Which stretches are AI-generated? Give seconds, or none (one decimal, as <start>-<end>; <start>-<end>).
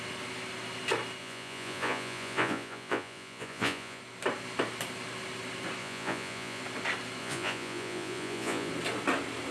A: 1.2-4.0; 5.8-6.6; 7.2-8.7